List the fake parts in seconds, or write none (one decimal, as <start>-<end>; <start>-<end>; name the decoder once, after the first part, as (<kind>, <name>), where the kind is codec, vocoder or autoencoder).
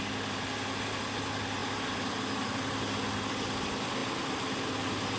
none